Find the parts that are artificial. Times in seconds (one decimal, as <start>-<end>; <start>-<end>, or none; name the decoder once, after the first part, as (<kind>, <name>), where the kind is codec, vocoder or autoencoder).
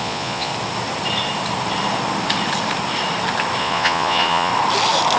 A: 0.0-0.5 (vocoder, Vocos); 3.6-4.5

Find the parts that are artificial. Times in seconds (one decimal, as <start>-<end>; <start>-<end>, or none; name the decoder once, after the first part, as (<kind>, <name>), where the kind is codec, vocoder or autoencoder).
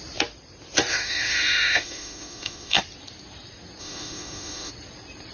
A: 0.9-2.8 (autoencoder, DAC-VAE); 3.8-4.7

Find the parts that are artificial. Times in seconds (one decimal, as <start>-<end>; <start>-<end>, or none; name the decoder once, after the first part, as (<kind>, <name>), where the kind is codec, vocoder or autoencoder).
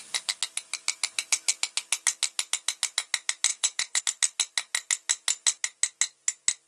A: 3.5-4.0 (vocoder, Vocos)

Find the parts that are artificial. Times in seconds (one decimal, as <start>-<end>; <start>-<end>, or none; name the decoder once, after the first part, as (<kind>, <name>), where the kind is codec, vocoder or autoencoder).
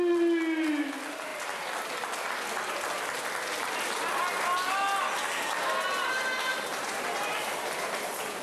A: 6.5-8.4 (vocoder, BigVGAN v2)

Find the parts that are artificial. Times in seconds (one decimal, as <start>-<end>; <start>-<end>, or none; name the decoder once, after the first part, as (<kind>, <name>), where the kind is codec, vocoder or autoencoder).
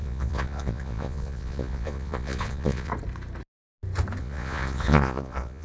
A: 0.0-2.9 (vocoder, Vocos); 4.2-5.6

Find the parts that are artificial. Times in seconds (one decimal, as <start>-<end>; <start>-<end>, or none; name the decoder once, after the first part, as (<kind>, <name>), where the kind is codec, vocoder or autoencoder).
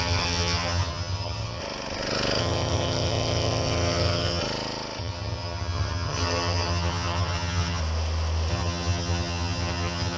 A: 0.0-1.6 (vocoder, HiFi-GAN); 2.4-4.4; 5.0-7.8; 8.5-10.2